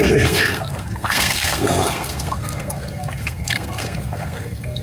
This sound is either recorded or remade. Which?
remade